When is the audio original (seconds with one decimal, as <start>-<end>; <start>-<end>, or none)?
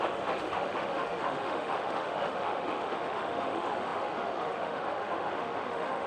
none